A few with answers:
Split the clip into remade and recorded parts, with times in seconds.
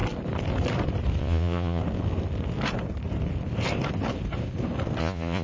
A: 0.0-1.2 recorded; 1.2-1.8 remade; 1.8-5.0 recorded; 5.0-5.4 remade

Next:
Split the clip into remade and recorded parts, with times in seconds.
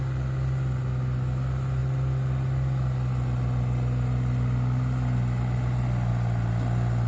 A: 0.0-7.1 recorded